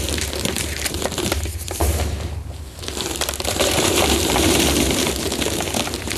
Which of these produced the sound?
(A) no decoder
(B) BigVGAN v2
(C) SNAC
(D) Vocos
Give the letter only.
B